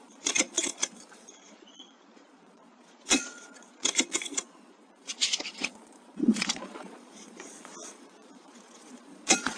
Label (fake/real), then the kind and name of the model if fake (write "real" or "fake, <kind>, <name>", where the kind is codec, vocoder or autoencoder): fake, vocoder, Vocos